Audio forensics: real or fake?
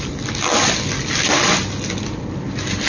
real